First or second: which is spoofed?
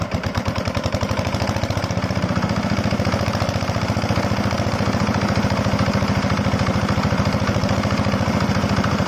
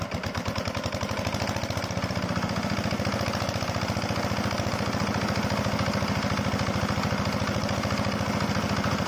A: first